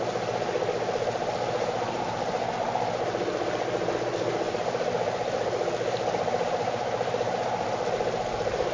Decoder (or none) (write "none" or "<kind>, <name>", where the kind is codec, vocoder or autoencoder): none